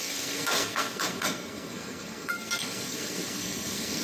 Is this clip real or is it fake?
fake